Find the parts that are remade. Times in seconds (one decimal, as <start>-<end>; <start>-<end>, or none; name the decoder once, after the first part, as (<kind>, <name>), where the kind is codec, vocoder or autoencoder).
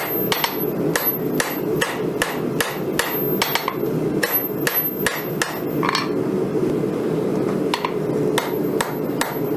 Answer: none